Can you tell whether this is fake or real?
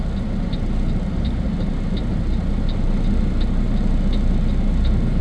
real